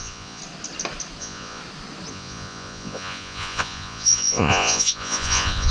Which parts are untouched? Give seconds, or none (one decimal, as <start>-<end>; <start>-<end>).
0.4-1.2; 1.6-2.1